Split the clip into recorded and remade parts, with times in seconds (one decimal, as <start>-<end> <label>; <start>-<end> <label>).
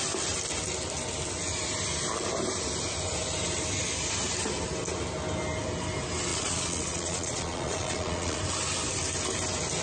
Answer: 0.0-6.3 recorded; 6.3-8.4 remade; 8.4-9.8 recorded